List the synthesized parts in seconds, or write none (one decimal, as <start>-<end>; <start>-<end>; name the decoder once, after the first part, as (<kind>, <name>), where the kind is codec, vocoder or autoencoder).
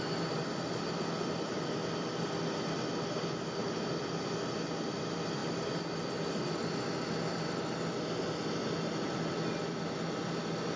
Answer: none